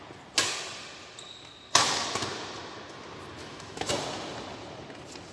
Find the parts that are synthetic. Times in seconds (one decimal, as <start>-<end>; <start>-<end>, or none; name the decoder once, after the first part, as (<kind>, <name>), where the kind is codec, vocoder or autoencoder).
3.4-3.9 (autoencoder, DAC-VAE)